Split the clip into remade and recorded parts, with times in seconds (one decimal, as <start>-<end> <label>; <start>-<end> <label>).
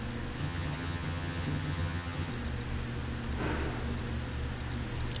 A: 0.0-0.4 recorded; 0.4-2.3 remade; 2.3-5.2 recorded